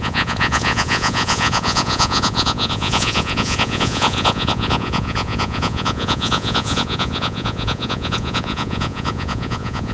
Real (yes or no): no